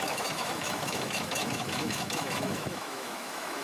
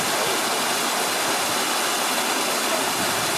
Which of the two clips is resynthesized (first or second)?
first